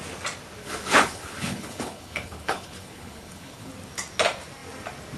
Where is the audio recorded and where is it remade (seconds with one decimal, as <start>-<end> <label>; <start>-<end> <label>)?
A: 0.0-0.6 recorded; 0.6-3.7 remade; 3.7-5.2 recorded

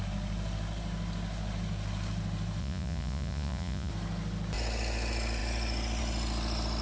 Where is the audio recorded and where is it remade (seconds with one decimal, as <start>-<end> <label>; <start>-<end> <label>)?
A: 0.0-2.6 recorded; 2.6-3.9 remade; 3.9-6.8 recorded

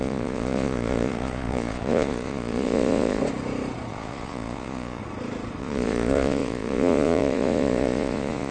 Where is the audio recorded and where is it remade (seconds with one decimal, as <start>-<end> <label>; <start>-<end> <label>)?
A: 0.0-3.2 remade; 3.2-3.9 recorded; 3.9-5.0 remade; 5.0-5.6 recorded; 5.6-8.5 remade

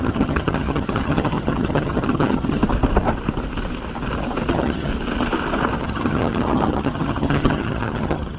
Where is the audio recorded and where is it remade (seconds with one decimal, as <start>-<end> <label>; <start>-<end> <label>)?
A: 0.0-2.6 remade; 2.6-4.5 recorded; 4.5-4.9 remade; 4.9-5.8 recorded; 5.8-8.4 remade